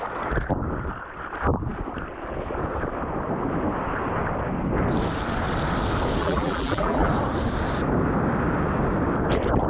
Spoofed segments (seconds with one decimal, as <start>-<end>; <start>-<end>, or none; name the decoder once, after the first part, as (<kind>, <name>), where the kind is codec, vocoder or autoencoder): 6.2-7.1 (vocoder, BigVGAN v2)